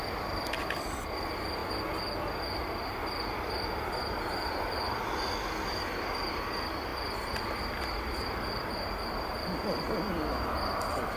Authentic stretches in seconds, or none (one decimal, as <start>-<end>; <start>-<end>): 0.0-11.2